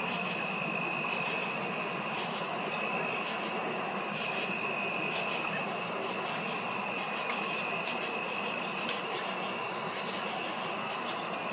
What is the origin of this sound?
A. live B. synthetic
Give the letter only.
A